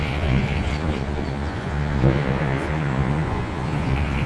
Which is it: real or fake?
fake